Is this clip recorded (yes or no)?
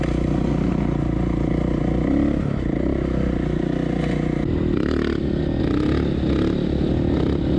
yes